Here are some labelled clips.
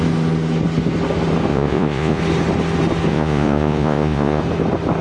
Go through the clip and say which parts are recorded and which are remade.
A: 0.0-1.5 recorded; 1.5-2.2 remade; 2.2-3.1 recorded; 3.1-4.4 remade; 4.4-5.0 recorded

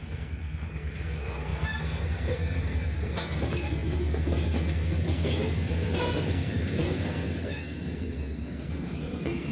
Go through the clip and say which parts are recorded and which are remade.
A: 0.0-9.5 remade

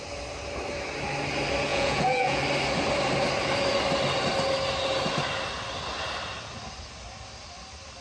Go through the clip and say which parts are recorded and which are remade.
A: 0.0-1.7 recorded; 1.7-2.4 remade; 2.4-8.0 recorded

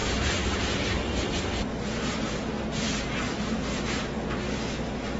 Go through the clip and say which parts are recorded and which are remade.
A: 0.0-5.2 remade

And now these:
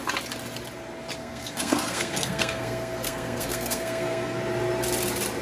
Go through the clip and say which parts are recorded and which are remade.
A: 0.0-1.2 recorded; 1.2-4.4 remade; 4.4-5.4 recorded

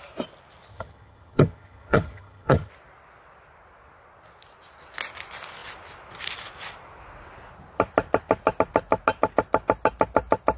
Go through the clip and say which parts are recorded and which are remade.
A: 0.0-0.7 recorded; 0.7-2.7 remade; 2.7-10.6 recorded

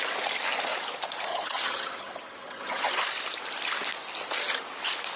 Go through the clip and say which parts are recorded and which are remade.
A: 0.0-1.3 recorded; 1.3-3.0 remade; 3.0-5.2 recorded

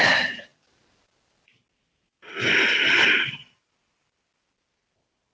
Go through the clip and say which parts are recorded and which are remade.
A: 0.0-5.3 recorded